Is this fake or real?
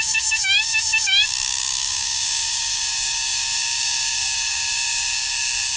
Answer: fake